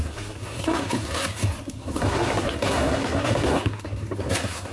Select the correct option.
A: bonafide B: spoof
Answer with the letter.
B